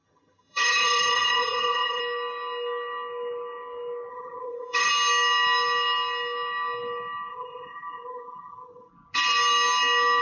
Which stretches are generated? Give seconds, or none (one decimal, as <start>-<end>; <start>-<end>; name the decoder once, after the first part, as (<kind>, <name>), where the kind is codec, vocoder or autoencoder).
0.0-2.0 (vocoder, HiFi-GAN); 4.1-4.9; 7.3-8.9